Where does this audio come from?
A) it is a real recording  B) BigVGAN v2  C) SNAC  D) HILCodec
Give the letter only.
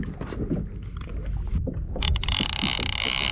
A